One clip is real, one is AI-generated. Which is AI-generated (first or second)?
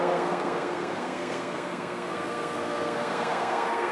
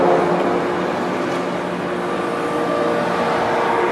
first